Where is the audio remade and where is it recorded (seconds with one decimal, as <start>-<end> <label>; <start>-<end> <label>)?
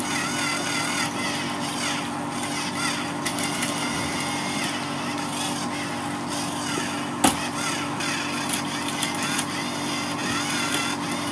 0.0-11.3 recorded